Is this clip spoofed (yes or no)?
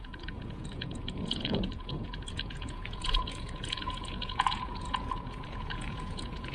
yes